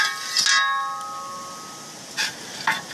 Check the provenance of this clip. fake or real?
real